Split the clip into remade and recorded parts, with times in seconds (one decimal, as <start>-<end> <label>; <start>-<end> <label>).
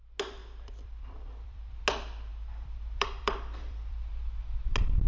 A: 0.0-0.4 recorded; 0.4-1.8 remade; 1.8-2.3 recorded; 2.3-4.1 remade; 4.1-5.1 recorded